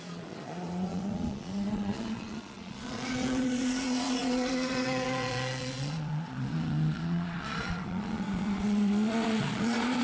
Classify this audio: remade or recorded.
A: remade